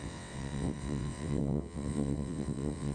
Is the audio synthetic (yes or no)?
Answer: yes